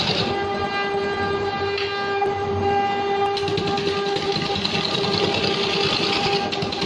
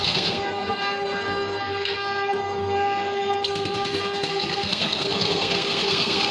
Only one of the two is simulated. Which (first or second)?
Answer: second